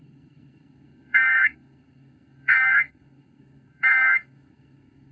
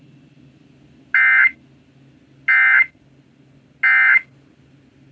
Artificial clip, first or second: first